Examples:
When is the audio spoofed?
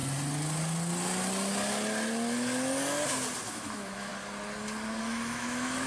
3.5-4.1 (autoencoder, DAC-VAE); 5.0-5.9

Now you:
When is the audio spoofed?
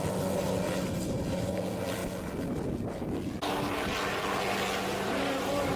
none